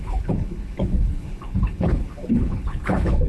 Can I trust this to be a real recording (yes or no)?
no